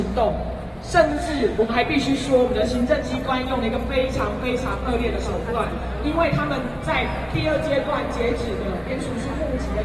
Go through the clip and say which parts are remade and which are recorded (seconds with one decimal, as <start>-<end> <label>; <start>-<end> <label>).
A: 0.0-1.1 recorded; 1.1-1.7 remade; 1.7-9.8 recorded